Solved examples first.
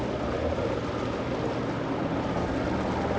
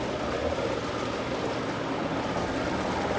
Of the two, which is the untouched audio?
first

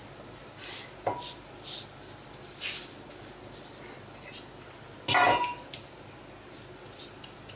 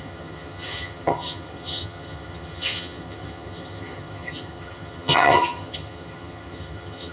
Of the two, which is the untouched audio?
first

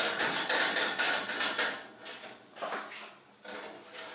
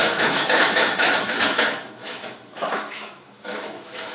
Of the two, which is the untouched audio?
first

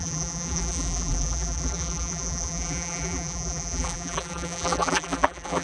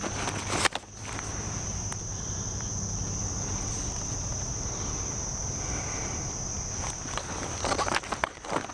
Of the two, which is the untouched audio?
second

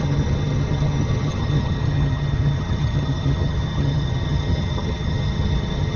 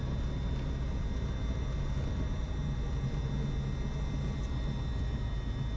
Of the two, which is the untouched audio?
second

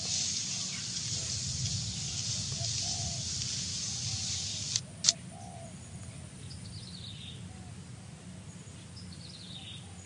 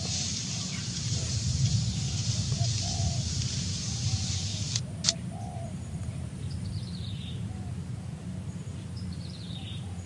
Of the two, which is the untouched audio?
first